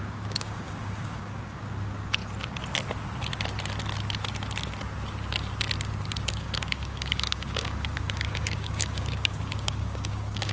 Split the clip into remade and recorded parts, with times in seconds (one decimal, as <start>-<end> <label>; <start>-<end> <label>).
0.0-2.2 remade; 2.2-6.3 recorded; 6.3-10.5 remade